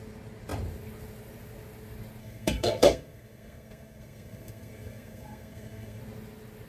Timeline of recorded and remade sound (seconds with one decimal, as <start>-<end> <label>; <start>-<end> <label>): 0.0-2.2 recorded; 2.2-6.0 remade; 6.0-6.7 recorded